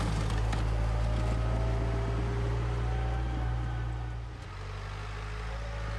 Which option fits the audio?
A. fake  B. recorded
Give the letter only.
B